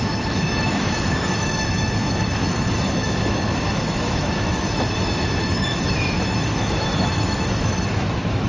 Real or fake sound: fake